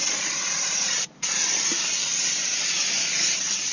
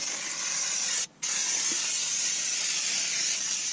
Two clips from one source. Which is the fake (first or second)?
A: first